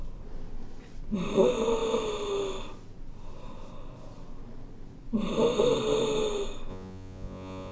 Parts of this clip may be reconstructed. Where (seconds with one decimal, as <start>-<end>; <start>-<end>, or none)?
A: 6.7-7.7